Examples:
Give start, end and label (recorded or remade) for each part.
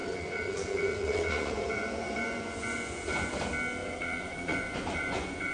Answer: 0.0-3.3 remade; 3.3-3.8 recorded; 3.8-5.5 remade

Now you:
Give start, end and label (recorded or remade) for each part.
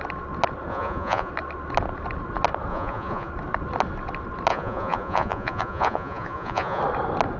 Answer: 0.0-0.7 recorded; 0.7-1.3 remade; 1.3-2.7 recorded; 2.7-3.3 remade; 3.3-4.5 recorded; 4.5-6.8 remade; 6.8-7.4 recorded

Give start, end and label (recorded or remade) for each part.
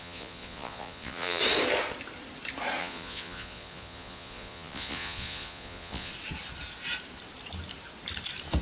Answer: 0.0-1.4 remade; 1.4-2.8 recorded; 2.8-6.1 remade; 6.1-8.6 recorded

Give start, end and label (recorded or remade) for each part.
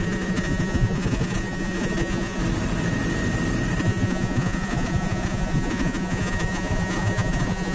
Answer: 0.0-2.4 remade; 2.4-3.8 recorded; 3.8-7.7 remade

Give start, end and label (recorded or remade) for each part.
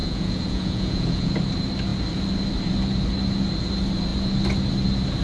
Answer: 0.0-1.3 remade; 1.3-5.2 recorded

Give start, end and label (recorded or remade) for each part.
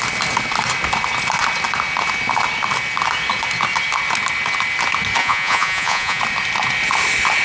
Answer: 0.0-5.2 recorded; 5.2-6.2 remade; 6.2-7.4 recorded